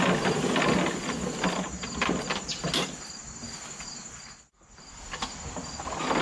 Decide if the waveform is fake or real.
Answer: real